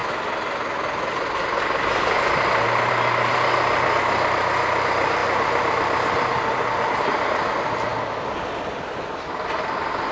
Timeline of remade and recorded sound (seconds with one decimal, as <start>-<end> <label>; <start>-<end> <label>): 0.0-5.2 recorded; 5.2-6.5 remade; 6.5-10.1 recorded